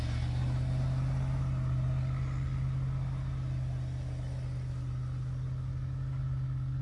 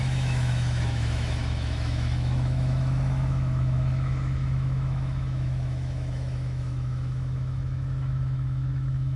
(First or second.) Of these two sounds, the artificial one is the second